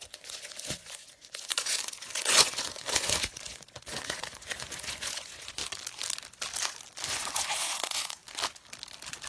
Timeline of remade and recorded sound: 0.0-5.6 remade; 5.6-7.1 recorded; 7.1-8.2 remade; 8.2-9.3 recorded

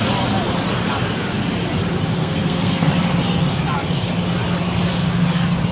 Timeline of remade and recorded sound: 0.0-2.2 recorded; 2.2-2.9 remade; 2.9-5.7 recorded

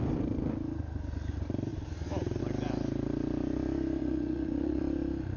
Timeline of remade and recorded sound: 0.0-4.0 recorded; 4.0-4.8 remade; 4.8-5.4 recorded

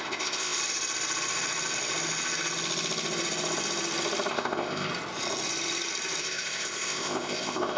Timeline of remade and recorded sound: 0.0-0.6 remade; 0.6-4.3 recorded; 4.3-4.9 remade; 4.9-6.2 recorded; 6.2-7.8 remade

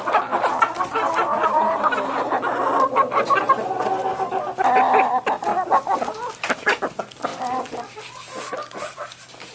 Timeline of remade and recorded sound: 0.0-7.3 recorded; 7.3-9.0 remade; 9.0-9.5 recorded

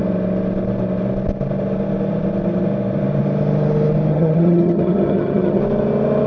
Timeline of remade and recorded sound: 0.0-4.1 recorded; 4.1-5.6 remade; 5.6-6.3 recorded

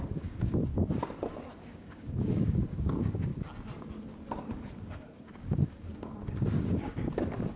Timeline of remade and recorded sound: 0.0-0.7 remade; 0.7-1.3 recorded; 1.3-3.3 remade; 3.3-4.5 recorded; 4.5-7.6 remade

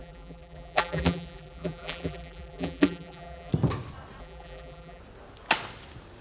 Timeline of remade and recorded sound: 0.0-3.5 remade; 3.5-4.2 recorded; 4.2-5.0 remade; 5.0-6.2 recorded